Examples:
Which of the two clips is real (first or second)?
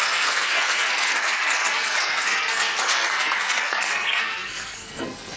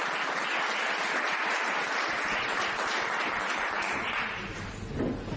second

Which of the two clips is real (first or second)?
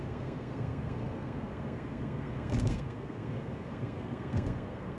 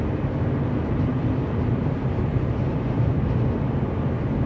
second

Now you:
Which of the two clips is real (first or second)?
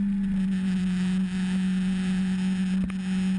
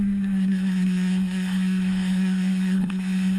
first